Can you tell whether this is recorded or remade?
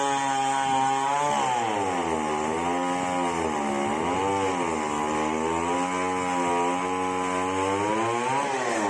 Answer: recorded